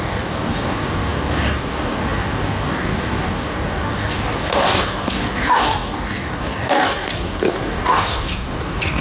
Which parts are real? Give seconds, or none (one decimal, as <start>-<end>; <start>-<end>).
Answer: none